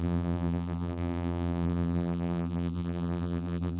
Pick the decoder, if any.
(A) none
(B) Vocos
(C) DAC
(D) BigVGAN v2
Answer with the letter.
D